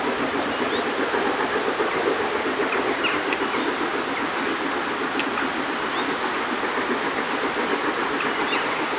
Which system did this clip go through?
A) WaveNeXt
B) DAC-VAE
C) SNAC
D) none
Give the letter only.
D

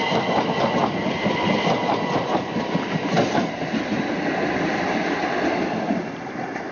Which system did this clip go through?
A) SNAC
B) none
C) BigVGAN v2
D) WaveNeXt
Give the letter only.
B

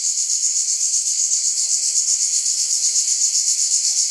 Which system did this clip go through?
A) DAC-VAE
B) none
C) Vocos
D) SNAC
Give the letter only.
D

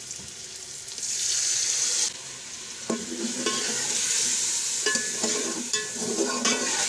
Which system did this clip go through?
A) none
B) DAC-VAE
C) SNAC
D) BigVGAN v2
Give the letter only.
A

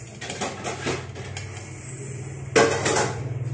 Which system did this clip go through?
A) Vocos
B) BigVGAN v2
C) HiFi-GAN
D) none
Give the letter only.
D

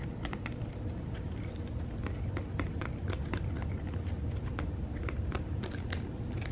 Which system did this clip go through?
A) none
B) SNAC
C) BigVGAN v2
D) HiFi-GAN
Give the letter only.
A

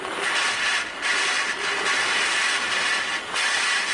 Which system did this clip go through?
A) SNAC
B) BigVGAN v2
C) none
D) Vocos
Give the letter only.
C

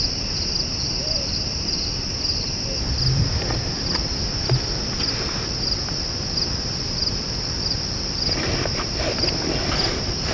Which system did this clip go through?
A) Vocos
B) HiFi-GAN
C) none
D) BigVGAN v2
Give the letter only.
C